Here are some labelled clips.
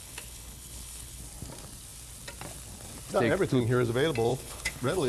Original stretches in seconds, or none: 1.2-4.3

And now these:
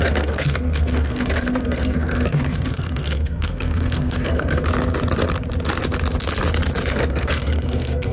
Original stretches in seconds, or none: 4.7-6.9

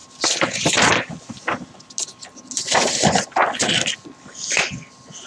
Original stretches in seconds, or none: 0.0-5.3